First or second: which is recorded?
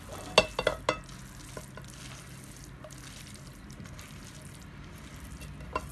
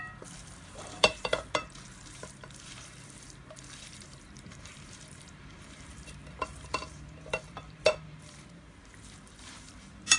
first